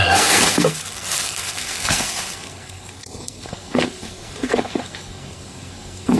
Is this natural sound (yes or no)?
no